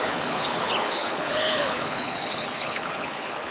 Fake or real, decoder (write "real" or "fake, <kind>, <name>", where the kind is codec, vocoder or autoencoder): fake, codec, HILCodec